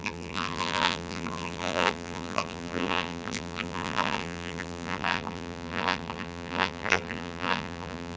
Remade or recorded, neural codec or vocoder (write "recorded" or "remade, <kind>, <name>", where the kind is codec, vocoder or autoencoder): remade, vocoder, BigVGAN v2